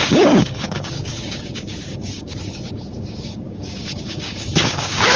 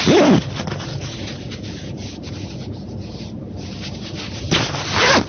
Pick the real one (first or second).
second